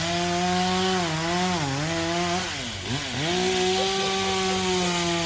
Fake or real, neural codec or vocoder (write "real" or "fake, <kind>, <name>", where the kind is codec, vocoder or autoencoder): real